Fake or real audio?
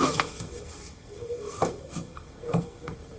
fake